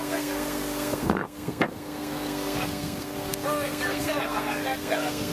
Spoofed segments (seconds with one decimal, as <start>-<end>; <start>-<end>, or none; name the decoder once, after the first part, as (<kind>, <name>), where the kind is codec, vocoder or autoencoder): 0.0-5.3 (codec, SNAC)